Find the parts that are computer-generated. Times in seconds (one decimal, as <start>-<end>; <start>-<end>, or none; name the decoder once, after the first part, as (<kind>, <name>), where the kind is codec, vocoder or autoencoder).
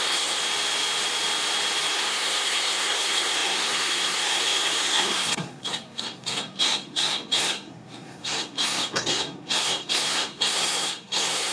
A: 0.0-0.4 (codec, SNAC); 1.9-11.5